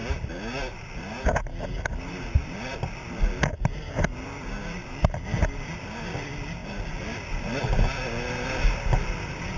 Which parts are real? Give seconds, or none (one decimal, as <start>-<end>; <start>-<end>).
0.0-9.6